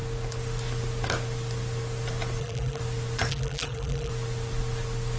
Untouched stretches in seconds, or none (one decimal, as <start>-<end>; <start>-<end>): 0.0-2.4; 2.8-3.3; 4.1-5.2